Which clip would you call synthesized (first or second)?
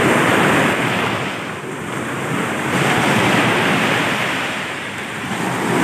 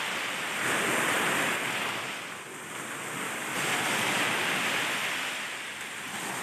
first